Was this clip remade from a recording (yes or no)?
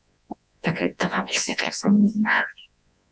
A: yes